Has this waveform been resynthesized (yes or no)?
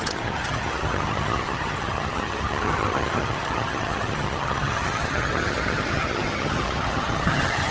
yes